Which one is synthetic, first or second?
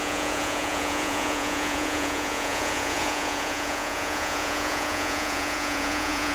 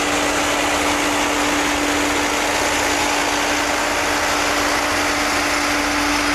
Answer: first